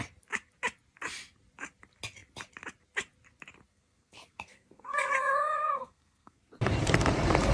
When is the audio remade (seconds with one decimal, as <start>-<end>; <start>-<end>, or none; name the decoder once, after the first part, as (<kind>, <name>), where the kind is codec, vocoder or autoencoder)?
3.7-6.4 (codec, SNAC)